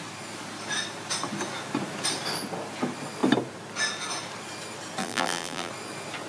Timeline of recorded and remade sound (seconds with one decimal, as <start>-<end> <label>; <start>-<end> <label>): 0.0-5.0 recorded; 5.0-5.7 remade; 5.7-6.3 recorded